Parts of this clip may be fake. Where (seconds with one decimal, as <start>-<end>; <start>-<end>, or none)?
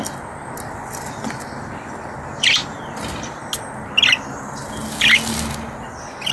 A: none